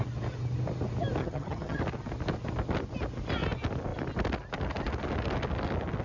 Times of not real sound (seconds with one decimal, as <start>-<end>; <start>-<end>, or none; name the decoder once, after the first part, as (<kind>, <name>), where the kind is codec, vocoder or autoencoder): 1.2-1.8 (vocoder, HiFi-GAN)